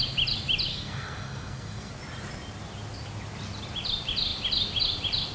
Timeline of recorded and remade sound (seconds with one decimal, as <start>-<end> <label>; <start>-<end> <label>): 0.0-0.7 recorded; 0.7-1.9 remade; 1.9-5.3 recorded